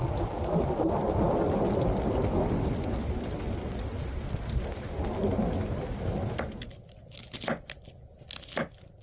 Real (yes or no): yes